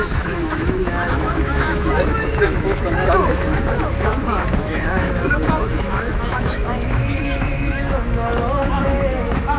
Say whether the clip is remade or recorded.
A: remade